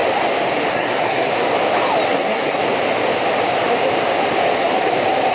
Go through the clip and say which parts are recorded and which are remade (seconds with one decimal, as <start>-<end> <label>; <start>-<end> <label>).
0.0-0.7 recorded; 0.7-1.3 remade; 1.3-2.1 recorded; 2.1-2.6 remade; 2.6-5.3 recorded